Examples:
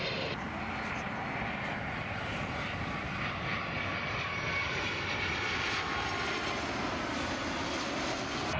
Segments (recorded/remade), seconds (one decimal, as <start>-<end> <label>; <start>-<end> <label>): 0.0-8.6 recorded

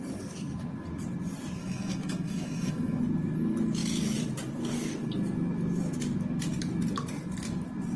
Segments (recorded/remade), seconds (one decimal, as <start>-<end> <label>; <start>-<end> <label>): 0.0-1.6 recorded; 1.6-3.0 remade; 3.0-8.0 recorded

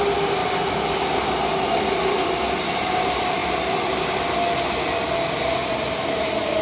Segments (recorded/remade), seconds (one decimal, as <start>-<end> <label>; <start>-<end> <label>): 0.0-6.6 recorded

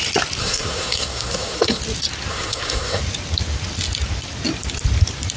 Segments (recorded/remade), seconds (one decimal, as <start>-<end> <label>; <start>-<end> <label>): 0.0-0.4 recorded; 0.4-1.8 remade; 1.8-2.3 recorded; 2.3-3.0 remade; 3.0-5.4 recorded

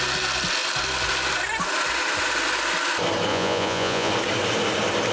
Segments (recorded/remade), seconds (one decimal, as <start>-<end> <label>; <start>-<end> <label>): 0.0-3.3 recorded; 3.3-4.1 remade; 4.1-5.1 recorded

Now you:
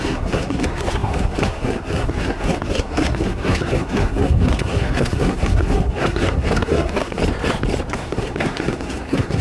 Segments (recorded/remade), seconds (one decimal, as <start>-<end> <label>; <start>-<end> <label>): 0.0-7.2 remade; 7.2-7.9 recorded; 7.9-9.4 remade

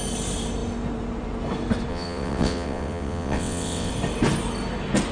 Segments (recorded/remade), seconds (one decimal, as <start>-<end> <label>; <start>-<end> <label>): 0.0-1.9 recorded; 1.9-3.9 remade; 3.9-5.1 recorded